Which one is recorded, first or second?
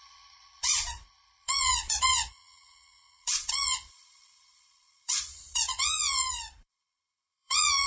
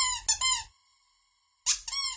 second